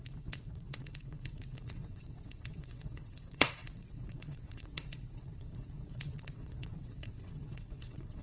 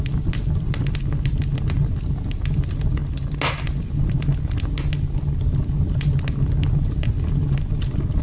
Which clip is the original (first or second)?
second